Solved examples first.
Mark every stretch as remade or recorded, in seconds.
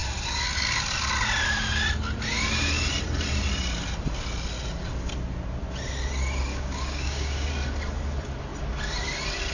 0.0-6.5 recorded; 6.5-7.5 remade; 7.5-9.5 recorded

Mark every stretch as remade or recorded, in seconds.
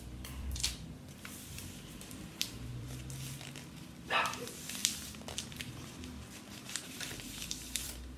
0.0-4.8 remade; 4.8-6.7 recorded; 6.7-8.2 remade